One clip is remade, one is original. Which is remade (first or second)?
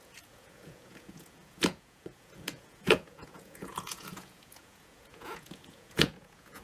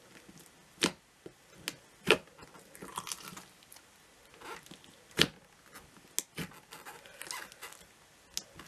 first